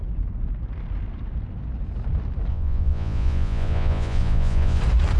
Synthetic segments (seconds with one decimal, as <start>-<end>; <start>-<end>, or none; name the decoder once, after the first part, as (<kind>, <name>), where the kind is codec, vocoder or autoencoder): 2.5-4.8 (vocoder, Vocos)